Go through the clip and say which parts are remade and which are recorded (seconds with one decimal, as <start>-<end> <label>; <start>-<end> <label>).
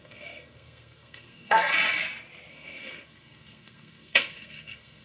0.0-1.7 remade; 1.7-2.5 recorded; 2.5-5.0 remade